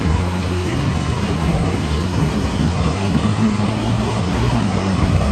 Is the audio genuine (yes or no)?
no